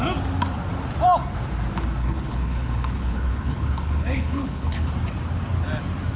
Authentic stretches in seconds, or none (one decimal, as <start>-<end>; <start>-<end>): 0.0-2.0; 4.9-6.2

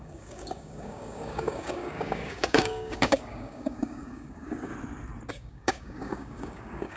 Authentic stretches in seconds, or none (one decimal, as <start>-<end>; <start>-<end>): 4.7-5.3

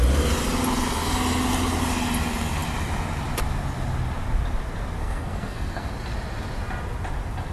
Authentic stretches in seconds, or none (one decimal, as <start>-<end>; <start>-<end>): 0.0-5.0; 5.9-7.5

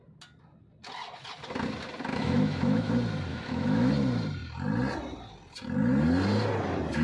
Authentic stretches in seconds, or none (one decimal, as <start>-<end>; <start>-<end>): 0.0-2.1; 2.9-3.3; 3.9-7.0